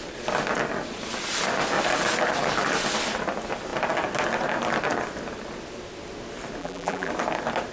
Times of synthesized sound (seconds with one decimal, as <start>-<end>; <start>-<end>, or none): 6.6-7.1